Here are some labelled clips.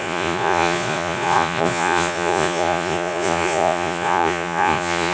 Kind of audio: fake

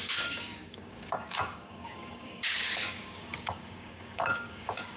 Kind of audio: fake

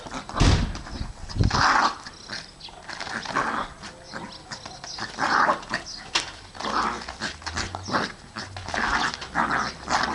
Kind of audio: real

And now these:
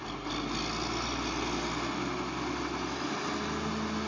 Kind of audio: real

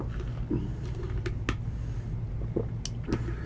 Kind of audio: real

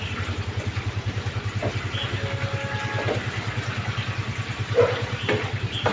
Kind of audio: real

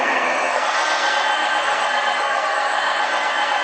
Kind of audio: fake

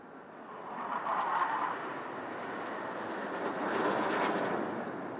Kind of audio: real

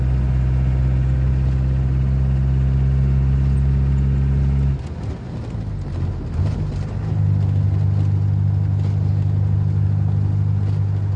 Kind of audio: real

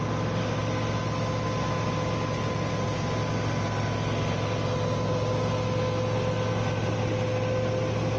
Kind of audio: real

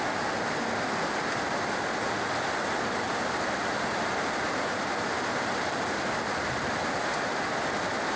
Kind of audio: real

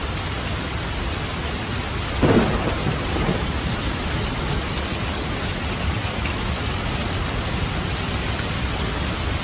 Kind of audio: real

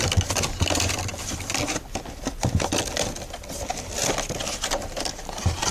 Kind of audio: real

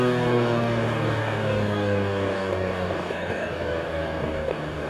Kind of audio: fake